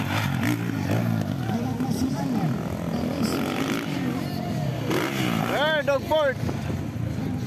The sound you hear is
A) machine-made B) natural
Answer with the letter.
B